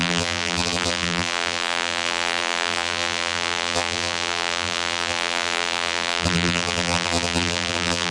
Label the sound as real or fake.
fake